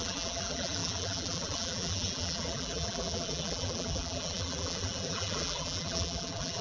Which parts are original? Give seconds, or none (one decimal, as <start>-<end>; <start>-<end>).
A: none

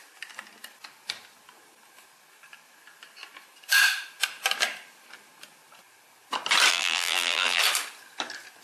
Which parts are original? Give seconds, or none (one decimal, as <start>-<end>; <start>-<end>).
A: 0.0-6.7; 7.6-8.6

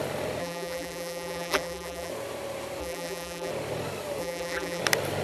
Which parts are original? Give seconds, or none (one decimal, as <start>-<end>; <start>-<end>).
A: 0.0-0.4; 2.1-2.8; 3.5-4.2; 4.8-5.2

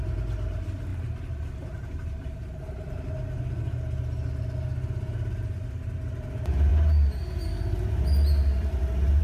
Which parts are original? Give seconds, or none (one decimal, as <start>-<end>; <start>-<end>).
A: 0.0-9.2

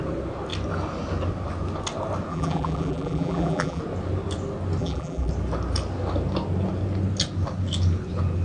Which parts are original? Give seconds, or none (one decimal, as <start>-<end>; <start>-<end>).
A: 0.0-2.3; 3.8-4.8; 5.3-8.4